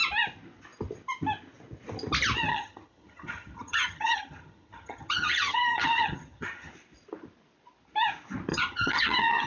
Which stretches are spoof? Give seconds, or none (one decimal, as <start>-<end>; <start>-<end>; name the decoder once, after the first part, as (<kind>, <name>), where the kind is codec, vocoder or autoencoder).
2.5-6.7 (vocoder, HiFi-GAN); 8.5-9.5